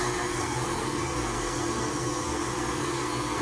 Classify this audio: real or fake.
fake